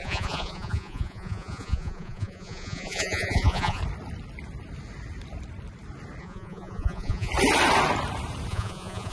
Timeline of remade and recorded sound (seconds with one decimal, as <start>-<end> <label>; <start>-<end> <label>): 0.0-3.8 remade; 3.8-6.2 recorded; 6.2-7.3 remade; 7.3-8.5 recorded; 8.5-9.1 remade